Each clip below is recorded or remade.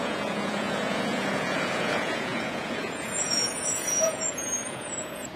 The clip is remade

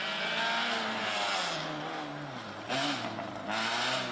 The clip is recorded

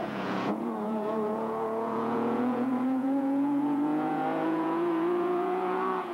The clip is remade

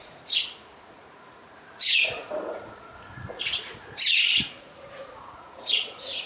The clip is remade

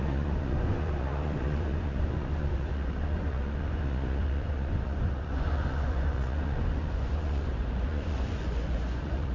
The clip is remade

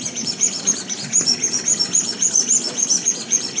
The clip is remade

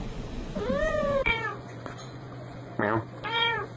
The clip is remade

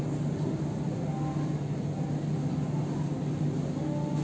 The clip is recorded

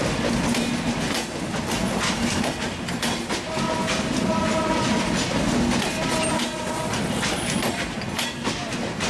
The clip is recorded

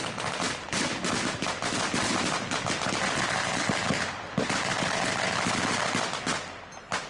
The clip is recorded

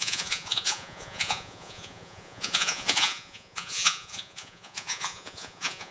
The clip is remade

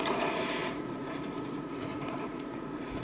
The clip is remade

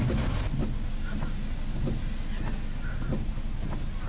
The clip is recorded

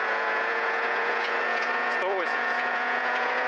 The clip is remade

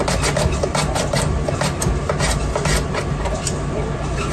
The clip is recorded